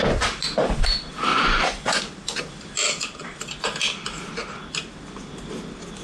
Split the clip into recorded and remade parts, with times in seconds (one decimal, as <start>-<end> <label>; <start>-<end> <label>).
0.0-1.3 recorded; 1.3-2.0 remade; 2.0-6.0 recorded